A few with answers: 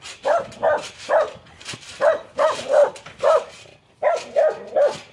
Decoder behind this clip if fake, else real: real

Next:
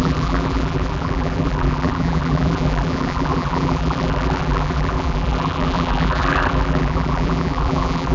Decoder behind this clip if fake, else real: fake, vocoder, BigVGAN v2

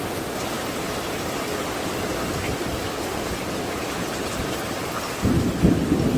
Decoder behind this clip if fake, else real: real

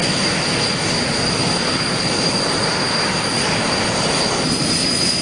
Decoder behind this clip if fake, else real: real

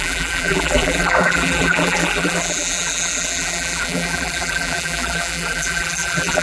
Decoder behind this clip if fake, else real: fake, vocoder, BigVGAN v2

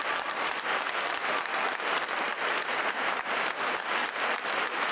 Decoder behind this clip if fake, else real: fake, vocoder, BigVGAN v2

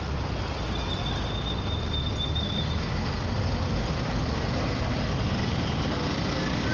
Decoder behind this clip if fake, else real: real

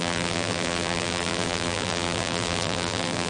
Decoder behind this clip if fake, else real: fake, vocoder, BigVGAN v2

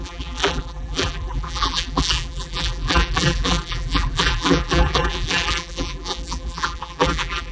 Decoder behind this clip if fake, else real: fake, vocoder, BigVGAN v2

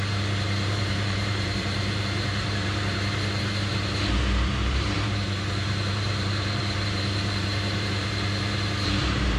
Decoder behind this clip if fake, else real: fake, vocoder, BigVGAN v2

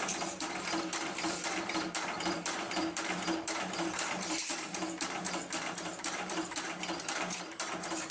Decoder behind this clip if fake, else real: fake, vocoder, BigVGAN v2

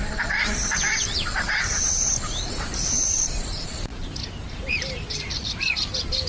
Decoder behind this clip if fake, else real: fake, vocoder, BigVGAN v2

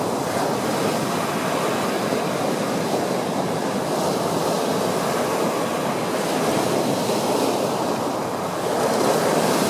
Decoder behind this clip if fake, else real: real